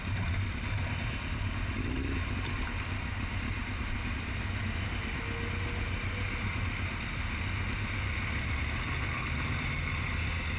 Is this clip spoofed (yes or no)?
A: no